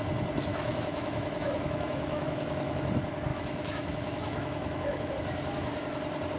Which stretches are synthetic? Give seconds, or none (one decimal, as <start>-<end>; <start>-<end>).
0.5-2.8; 3.3-5.1